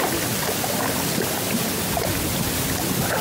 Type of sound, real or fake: real